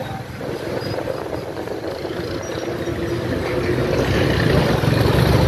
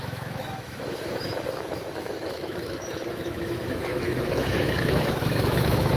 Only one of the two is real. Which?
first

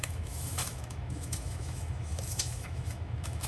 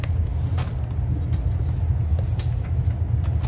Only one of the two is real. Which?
second